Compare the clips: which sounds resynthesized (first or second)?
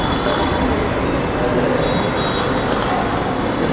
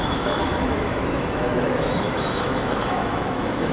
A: second